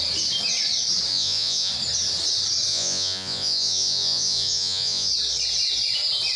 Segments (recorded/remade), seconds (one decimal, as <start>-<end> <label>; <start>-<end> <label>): 0.0-1.1 recorded; 1.1-1.7 remade; 1.7-2.7 recorded; 2.7-5.1 remade; 5.1-6.4 recorded

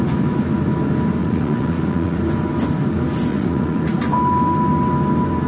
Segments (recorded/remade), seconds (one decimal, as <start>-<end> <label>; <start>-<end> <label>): 0.0-1.2 recorded; 1.2-2.2 remade; 2.2-3.3 recorded; 3.3-4.0 remade; 4.0-5.5 recorded

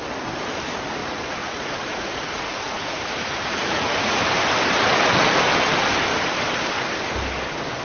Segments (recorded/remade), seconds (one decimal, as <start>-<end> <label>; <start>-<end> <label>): 0.0-1.0 recorded; 1.0-4.2 remade; 4.2-7.8 recorded

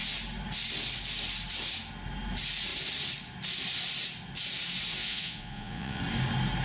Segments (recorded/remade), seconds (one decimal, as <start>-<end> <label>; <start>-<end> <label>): 0.0-5.0 recorded; 5.0-6.0 remade; 6.0-6.6 recorded

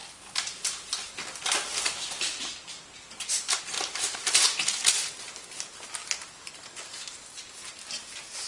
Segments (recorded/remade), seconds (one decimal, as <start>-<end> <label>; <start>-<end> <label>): 0.0-8.5 recorded